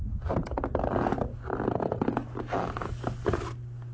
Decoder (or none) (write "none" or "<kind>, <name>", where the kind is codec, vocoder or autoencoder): none